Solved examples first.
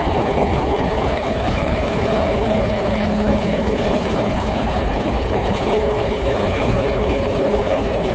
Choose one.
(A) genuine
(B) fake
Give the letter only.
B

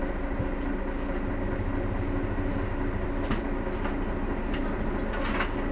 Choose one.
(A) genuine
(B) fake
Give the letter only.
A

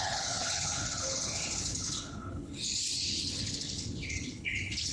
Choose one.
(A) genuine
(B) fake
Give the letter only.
B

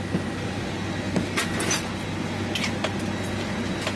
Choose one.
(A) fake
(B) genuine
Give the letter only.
B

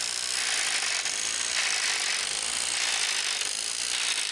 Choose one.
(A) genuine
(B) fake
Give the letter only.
A